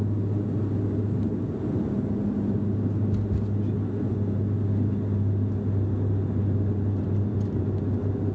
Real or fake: real